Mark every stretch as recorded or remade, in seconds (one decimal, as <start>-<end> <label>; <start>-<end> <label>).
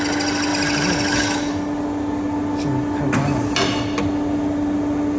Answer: 0.0-5.2 recorded